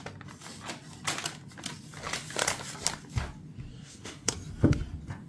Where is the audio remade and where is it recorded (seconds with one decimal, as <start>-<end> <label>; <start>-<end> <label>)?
0.0-3.7 recorded; 3.7-4.3 remade; 4.3-5.3 recorded